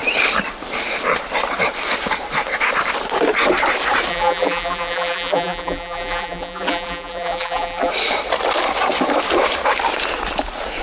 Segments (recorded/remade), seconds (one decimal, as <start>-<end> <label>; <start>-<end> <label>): 0.0-4.1 recorded; 4.1-7.9 remade; 7.9-10.8 recorded